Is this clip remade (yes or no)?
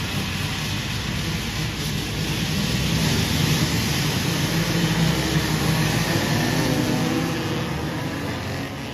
no